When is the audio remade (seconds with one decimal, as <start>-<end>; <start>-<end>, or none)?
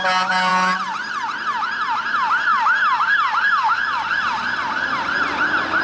none